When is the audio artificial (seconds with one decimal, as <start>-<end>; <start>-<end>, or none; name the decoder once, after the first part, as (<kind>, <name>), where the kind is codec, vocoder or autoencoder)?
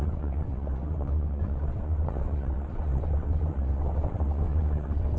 0.0-5.2 (vocoder, WaveNeXt)